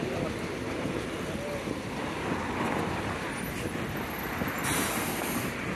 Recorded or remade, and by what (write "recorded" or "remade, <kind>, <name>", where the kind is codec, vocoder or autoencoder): recorded